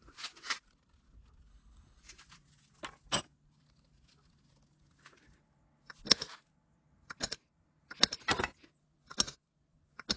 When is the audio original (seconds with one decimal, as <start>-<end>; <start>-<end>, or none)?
0.0-1.5; 2.1-10.2